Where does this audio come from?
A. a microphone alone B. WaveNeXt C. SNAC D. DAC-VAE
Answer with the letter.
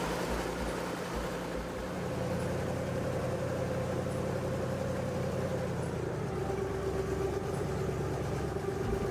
A